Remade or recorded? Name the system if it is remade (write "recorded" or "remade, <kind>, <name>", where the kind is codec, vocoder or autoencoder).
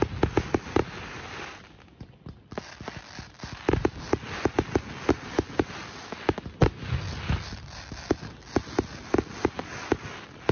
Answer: recorded